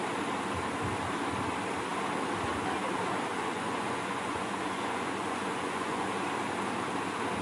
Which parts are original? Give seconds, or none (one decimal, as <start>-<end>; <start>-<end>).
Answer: 0.0-3.3; 6.1-7.4